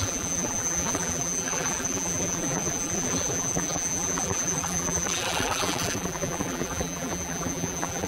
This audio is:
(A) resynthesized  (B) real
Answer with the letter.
A